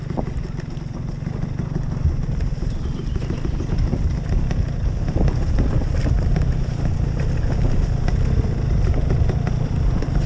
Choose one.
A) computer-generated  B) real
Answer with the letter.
B